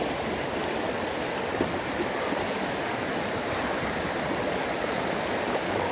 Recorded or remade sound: recorded